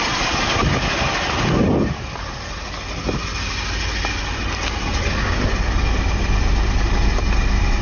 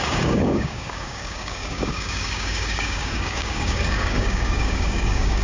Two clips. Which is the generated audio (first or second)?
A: second